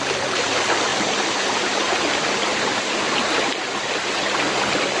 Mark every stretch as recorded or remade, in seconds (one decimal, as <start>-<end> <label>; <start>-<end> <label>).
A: 0.0-0.9 recorded; 0.9-3.0 remade; 3.0-5.0 recorded